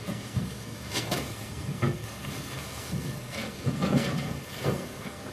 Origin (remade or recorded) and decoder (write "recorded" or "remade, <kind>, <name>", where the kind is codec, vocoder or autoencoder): remade, codec, SNAC